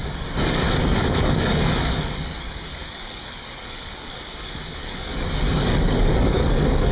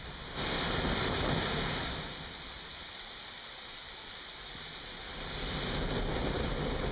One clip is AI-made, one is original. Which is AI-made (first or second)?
first